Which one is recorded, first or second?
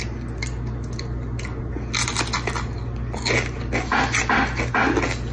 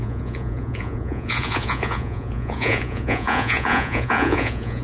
first